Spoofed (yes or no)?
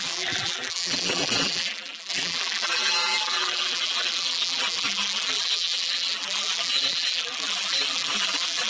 yes